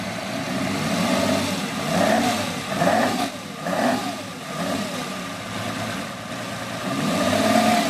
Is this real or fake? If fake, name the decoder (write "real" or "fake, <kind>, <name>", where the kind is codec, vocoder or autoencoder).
real